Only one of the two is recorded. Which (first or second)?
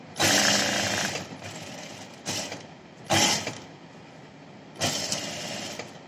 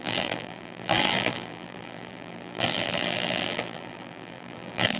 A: first